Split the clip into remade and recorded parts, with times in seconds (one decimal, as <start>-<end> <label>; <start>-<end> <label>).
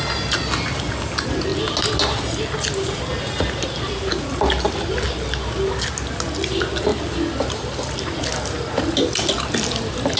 0.0-10.2 recorded